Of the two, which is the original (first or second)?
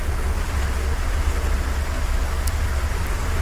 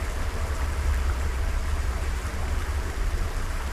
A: first